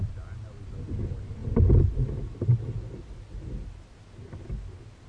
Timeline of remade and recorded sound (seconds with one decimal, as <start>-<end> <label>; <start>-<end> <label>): 0.0-5.1 recorded